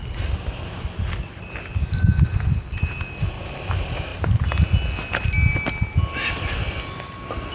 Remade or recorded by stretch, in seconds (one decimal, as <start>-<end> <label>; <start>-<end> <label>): 0.0-7.5 recorded

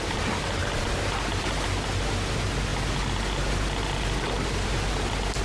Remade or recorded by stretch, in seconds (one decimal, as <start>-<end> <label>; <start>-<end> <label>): 0.0-5.4 recorded

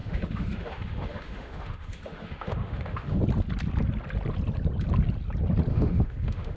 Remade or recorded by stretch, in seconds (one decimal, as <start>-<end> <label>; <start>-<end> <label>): 0.0-3.2 remade; 3.2-5.7 recorded; 5.7-6.6 remade

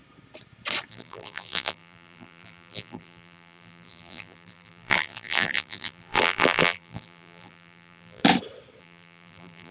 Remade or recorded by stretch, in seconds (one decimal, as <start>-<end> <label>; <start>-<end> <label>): 0.0-0.9 recorded; 0.9-8.2 remade; 8.2-8.8 recorded; 8.8-9.7 remade

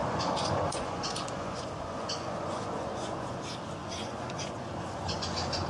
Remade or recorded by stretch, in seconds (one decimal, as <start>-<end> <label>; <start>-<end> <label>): 0.0-3.4 remade; 3.4-3.8 recorded; 3.8-5.7 remade

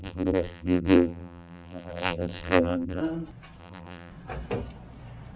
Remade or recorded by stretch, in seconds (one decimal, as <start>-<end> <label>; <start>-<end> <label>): 0.0-3.0 remade; 3.0-3.6 recorded; 3.6-4.1 remade; 4.1-5.4 recorded

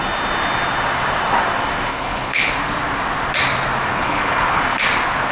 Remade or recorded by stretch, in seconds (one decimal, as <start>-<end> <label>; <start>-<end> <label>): 0.0-1.9 recorded; 1.9-2.5 remade; 2.5-3.9 recorded; 3.9-4.6 remade; 4.6-5.3 recorded

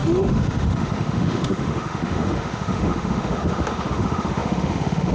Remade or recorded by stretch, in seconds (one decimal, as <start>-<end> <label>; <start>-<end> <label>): 0.0-5.1 remade